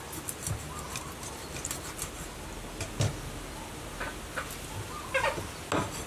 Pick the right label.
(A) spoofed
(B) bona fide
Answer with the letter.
B